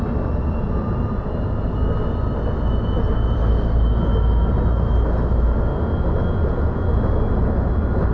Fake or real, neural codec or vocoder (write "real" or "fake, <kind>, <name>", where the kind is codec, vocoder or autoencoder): real